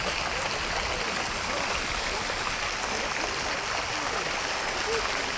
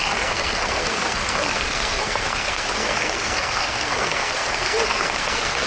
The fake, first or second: second